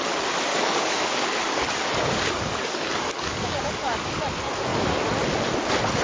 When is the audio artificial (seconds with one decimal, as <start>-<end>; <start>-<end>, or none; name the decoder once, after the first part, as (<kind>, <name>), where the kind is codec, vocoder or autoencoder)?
0.5-4.1 (codec, DAC)

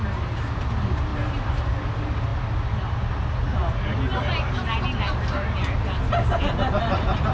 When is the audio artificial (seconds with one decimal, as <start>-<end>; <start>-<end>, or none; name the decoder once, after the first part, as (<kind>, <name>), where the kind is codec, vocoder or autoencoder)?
none

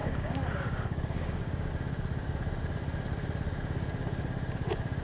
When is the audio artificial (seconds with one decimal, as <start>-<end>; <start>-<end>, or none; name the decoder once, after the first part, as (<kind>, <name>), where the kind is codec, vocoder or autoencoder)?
0.0-1.7 (codec, DAC)

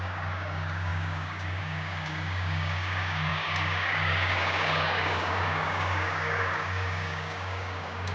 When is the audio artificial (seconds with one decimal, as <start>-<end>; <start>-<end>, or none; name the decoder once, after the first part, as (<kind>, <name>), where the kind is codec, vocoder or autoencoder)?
0.0-8.1 (codec, DAC)

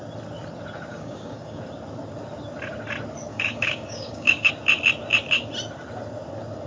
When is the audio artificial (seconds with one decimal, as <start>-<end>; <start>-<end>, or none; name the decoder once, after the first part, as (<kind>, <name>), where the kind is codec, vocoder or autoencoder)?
0.9-1.6 (codec, DAC); 3.3-4.5

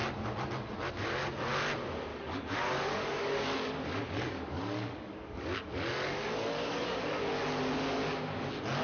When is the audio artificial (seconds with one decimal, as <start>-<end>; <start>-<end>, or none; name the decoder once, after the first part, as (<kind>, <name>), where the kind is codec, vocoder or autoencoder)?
2.1-7.2 (codec, DAC)

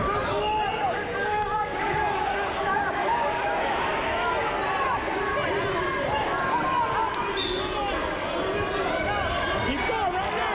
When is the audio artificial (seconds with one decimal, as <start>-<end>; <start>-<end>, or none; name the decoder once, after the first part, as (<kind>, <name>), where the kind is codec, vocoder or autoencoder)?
0.8-4.6 (codec, DAC)

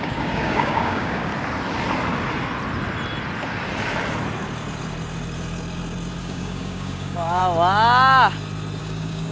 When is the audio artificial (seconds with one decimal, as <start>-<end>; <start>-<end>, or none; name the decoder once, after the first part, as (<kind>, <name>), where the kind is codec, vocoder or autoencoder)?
0.0-1.3 (codec, DAC); 6.2-7.4; 8.8-9.3